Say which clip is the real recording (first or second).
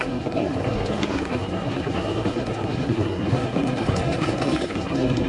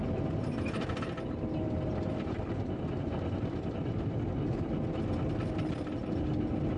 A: second